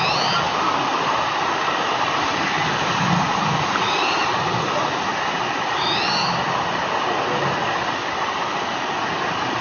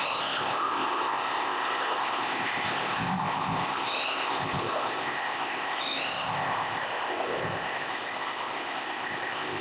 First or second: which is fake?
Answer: second